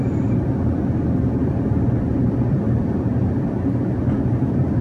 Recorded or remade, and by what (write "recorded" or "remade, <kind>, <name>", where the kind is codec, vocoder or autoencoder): remade, vocoder, BigVGAN v2